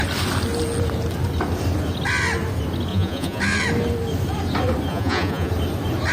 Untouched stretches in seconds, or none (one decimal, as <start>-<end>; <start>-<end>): 0.0-2.9; 3.4-4.9; 5.5-6.1

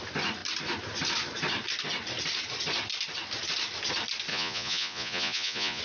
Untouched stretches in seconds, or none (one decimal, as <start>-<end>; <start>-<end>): 0.0-4.3

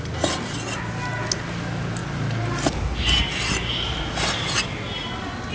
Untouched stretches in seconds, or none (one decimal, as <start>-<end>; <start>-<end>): 0.0-5.5

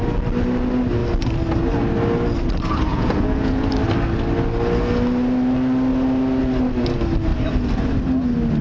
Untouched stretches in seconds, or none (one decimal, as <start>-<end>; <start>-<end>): 0.0-2.9; 3.7-8.6

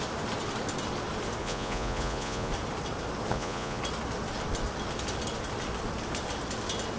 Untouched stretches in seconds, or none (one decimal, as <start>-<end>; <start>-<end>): 0.0-1.4; 2.5-3.3; 3.8-7.0

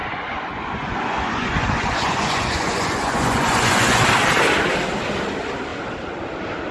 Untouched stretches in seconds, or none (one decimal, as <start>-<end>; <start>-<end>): 4.0-6.7

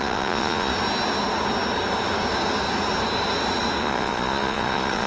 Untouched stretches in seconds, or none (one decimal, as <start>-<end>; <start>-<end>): 0.7-3.8

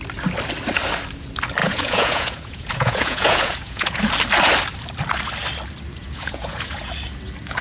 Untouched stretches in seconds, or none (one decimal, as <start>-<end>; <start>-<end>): 0.0-1.6; 4.0-6.0; 6.9-7.6